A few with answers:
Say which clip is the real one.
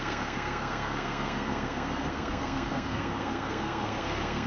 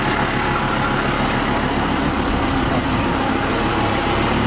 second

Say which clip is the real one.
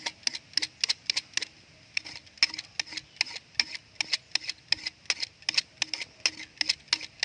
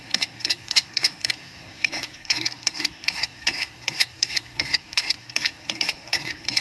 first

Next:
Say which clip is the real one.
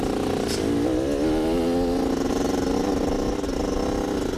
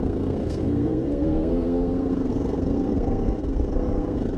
first